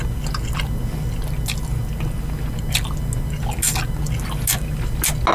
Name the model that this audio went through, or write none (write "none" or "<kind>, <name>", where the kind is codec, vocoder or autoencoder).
none